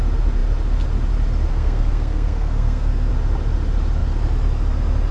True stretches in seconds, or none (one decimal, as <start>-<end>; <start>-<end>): 0.0-1.5; 3.1-5.1